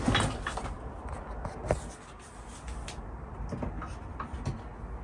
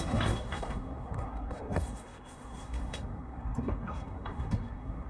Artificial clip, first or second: second